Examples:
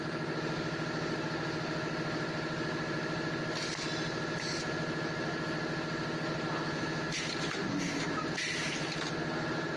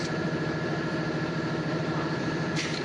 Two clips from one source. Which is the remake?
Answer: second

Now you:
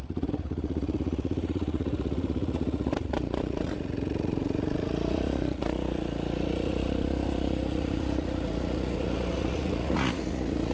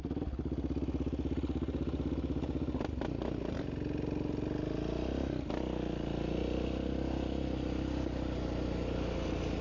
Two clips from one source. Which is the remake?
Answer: first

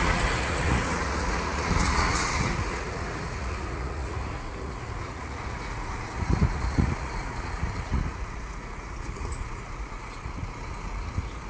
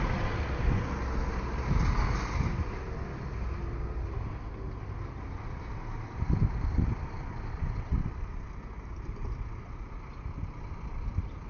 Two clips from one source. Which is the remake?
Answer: first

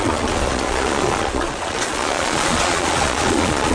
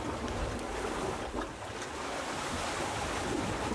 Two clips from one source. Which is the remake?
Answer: first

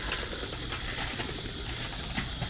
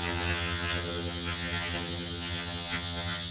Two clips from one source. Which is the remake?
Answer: second